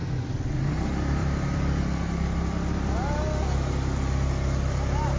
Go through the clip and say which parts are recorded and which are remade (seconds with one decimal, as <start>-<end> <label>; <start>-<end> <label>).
0.0-1.2 recorded; 1.2-1.8 remade; 1.8-5.2 recorded